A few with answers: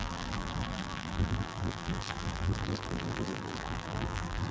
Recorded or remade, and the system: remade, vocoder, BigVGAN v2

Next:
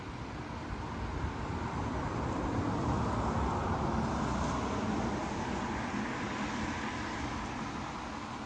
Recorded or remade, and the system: recorded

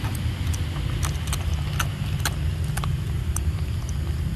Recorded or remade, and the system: recorded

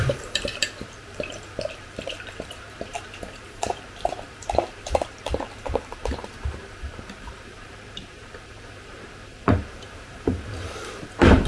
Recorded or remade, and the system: remade, vocoder, BigVGAN v2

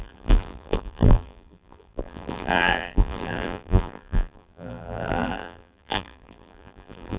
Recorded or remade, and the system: remade, vocoder, BigVGAN v2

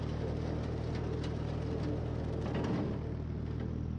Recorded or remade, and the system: recorded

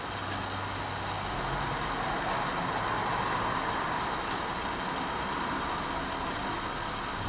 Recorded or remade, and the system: recorded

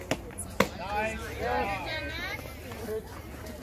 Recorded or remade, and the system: recorded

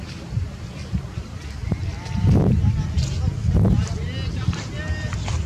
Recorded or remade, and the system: recorded